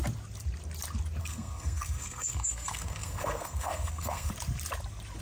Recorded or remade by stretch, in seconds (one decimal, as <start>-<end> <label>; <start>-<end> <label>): 0.0-1.2 recorded; 1.2-4.3 remade; 4.3-5.2 recorded